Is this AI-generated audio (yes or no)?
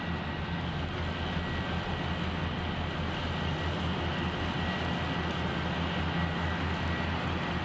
no